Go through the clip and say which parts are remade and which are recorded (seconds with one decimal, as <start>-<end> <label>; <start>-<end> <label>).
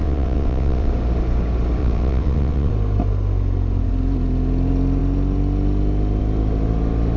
0.0-0.9 remade; 0.9-1.8 recorded; 1.8-2.7 remade; 2.7-7.2 recorded